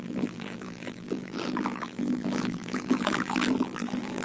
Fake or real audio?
fake